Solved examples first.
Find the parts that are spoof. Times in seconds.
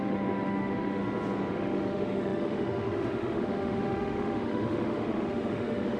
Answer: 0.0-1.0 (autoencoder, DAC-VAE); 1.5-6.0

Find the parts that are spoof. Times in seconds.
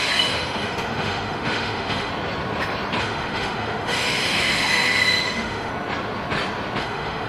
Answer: 0.0-2.1 (autoencoder, DAC-VAE); 3.0-5.7; 6.8-7.3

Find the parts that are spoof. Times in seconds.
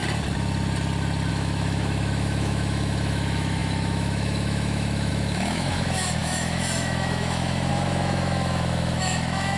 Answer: 1.3-9.6 (autoencoder, DAC-VAE)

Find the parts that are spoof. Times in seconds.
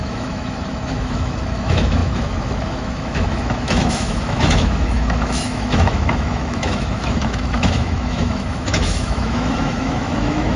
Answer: 0.0-10.6 (autoencoder, DAC-VAE)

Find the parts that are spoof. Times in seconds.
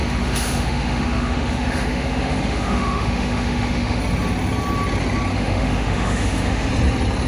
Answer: 0.0-4.0 (autoencoder, DAC-VAE); 5.3-6.7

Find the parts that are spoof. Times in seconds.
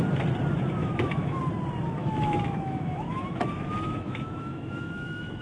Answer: 0.8-1.4 (autoencoder, DAC-VAE); 2.0-5.4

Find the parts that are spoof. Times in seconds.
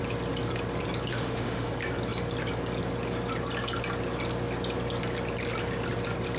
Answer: 1.1-1.7 (autoencoder, DAC-VAE)